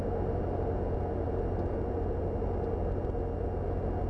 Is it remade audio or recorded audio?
recorded